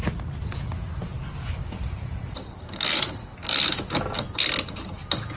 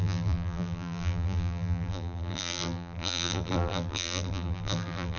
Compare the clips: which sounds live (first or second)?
first